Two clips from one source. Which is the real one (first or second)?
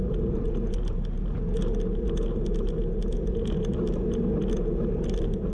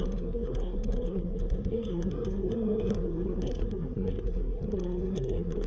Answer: first